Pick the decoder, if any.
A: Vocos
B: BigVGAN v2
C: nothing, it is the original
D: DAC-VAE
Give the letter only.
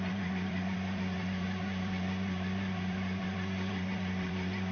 B